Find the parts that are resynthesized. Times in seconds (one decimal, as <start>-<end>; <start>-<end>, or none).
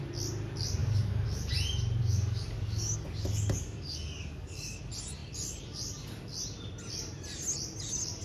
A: 0.8-1.5; 2.0-4.8